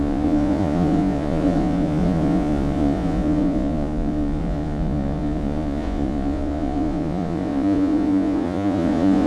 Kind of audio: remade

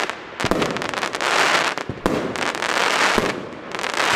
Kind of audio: recorded